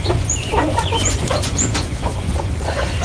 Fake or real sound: fake